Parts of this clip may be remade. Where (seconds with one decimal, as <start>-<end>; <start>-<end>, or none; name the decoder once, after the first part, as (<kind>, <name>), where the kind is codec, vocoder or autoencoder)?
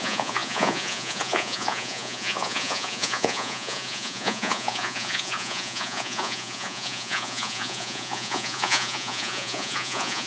0.0-10.3 (vocoder, Vocos)